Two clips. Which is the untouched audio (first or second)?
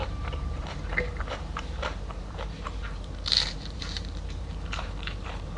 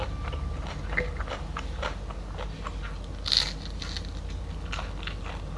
second